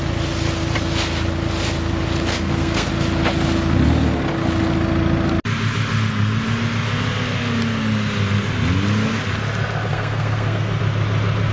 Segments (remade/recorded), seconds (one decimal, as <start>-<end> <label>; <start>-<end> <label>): 0.0-2.3 recorded; 2.3-2.9 remade; 2.9-9.9 recorded; 9.9-10.8 remade; 10.8-11.5 recorded